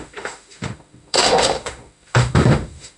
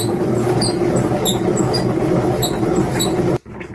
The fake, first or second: first